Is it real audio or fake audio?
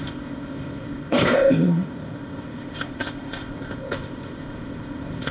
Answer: fake